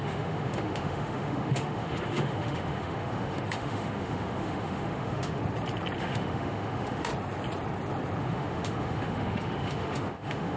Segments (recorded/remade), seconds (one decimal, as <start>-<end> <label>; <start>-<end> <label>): 0.0-5.4 remade; 5.4-6.0 recorded; 6.0-7.1 remade; 7.1-8.2 recorded; 8.2-10.6 remade